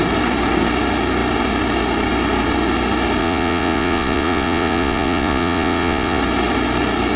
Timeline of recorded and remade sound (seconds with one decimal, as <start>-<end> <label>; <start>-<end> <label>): 0.0-3.2 recorded; 3.2-6.2 remade; 6.2-7.2 recorded